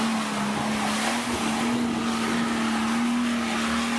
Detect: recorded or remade recorded